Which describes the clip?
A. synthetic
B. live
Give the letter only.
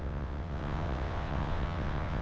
A